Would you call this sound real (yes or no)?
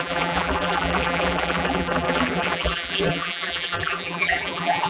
no